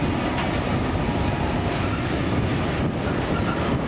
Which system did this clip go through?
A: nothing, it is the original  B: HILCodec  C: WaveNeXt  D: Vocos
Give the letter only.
A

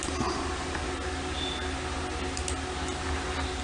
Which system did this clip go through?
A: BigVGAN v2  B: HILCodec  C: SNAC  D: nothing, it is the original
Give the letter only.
D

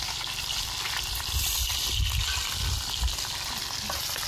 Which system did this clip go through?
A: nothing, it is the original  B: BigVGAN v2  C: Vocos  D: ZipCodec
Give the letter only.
A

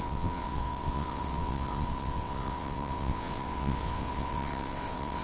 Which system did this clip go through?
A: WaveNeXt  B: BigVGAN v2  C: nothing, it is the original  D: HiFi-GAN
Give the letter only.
A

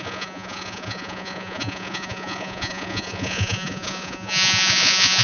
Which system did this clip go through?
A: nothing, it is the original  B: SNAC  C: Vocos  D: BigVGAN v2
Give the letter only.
C